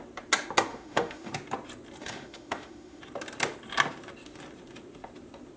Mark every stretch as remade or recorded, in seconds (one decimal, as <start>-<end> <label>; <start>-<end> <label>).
0.0-0.7 recorded; 0.7-1.3 remade; 1.3-2.0 recorded; 2.0-3.0 remade; 3.0-5.6 recorded